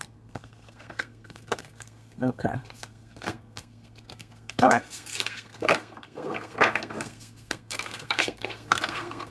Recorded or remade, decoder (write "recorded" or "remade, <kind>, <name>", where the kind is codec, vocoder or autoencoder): remade, codec, SNAC